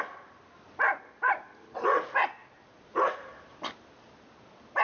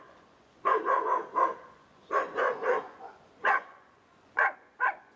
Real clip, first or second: first